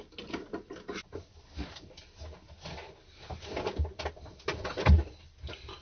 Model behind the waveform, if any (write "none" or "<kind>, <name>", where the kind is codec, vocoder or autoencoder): none